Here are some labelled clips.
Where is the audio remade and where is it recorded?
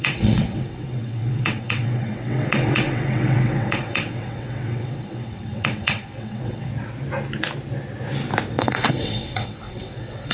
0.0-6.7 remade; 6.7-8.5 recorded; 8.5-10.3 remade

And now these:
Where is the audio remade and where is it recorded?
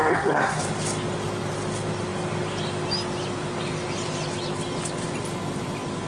0.0-0.6 remade; 0.6-6.1 recorded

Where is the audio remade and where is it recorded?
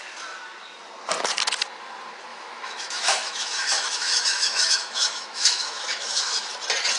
0.0-2.3 recorded; 2.3-6.5 remade; 6.5-7.0 recorded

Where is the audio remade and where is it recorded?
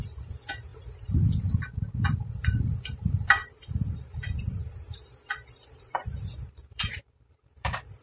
0.0-3.4 recorded; 3.4-8.0 remade